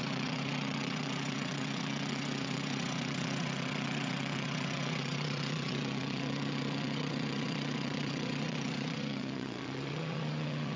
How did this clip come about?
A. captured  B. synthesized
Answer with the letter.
B